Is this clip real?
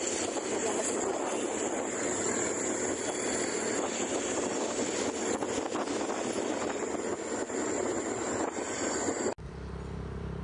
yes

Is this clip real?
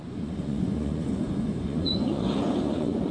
no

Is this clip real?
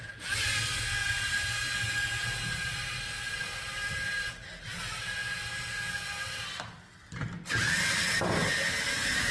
yes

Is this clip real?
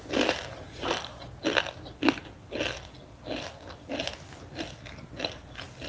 yes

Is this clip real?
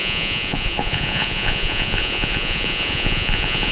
no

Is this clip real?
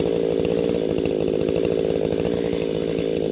yes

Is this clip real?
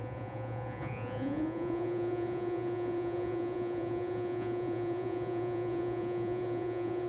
no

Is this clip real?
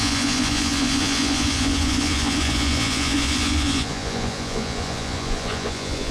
no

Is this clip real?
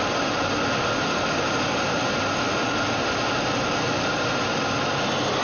yes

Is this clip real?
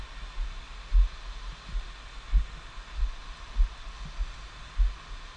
yes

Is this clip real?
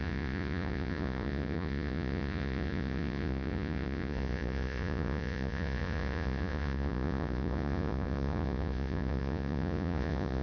no